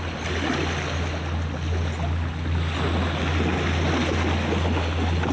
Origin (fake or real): real